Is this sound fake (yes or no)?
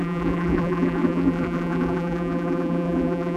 yes